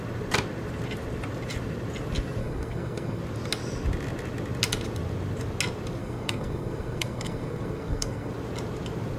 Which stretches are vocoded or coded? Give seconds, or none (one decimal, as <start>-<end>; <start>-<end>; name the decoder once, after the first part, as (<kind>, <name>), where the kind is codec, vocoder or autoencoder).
2.4-3.2 (codec, SNAC); 6.0-8.3